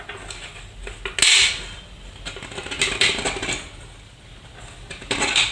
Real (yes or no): yes